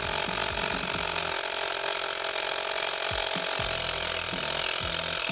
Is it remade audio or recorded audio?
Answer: recorded